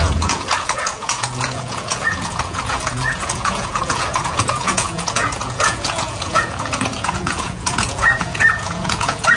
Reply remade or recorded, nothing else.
remade